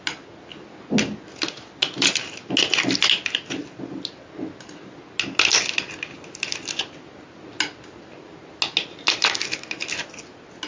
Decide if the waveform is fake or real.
real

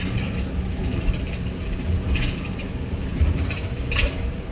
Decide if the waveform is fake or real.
fake